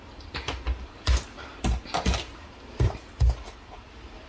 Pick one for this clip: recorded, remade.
recorded